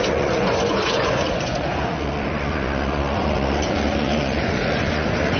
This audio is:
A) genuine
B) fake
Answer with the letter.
B